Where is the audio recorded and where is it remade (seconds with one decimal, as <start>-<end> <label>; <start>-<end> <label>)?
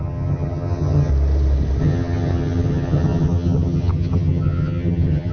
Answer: 0.0-1.1 remade; 1.1-1.8 recorded; 1.8-5.3 remade